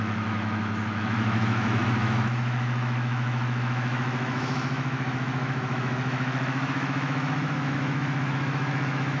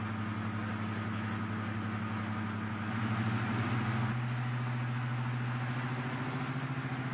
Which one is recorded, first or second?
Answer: second